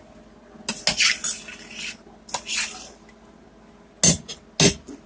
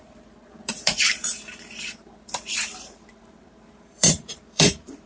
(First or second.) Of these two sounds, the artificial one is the second